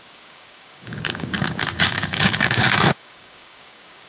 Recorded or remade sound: remade